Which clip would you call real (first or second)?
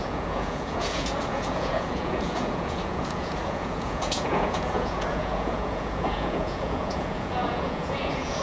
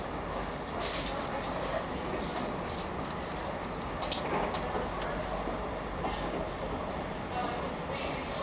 second